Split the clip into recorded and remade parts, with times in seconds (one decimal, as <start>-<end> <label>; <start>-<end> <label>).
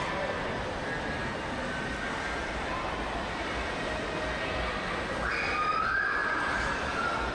0.0-7.3 recorded